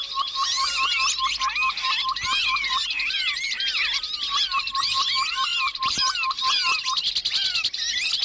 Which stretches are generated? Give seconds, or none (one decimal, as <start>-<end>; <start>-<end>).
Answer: none